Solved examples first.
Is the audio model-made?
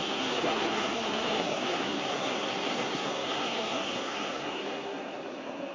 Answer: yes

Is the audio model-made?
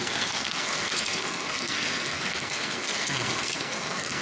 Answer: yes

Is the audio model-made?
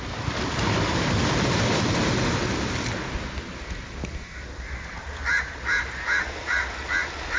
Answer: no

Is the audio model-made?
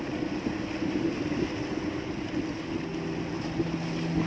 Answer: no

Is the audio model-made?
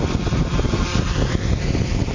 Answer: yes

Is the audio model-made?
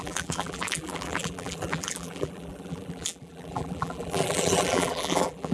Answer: yes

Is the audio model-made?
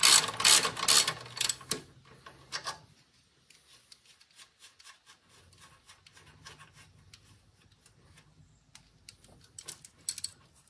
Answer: no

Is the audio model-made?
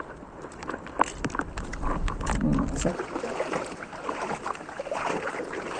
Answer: yes